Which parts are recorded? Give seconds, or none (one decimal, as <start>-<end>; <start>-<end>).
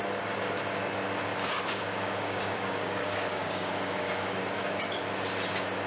0.0-1.3; 4.8-5.9